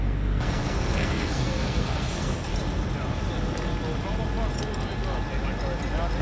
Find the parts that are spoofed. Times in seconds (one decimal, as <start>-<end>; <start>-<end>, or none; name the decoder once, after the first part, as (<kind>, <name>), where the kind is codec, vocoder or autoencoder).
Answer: 0.0-2.5 (codec, SNAC)